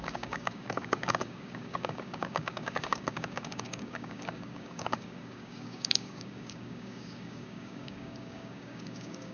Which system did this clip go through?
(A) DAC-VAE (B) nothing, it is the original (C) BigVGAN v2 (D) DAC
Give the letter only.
D